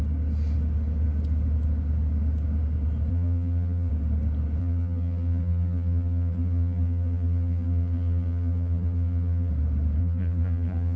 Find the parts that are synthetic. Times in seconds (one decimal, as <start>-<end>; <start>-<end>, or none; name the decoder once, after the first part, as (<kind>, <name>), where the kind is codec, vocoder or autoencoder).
3.1-3.9 (vocoder, BigVGAN v2); 4.6-9.5; 10.0-11.0